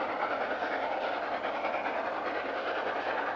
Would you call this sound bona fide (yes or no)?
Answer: yes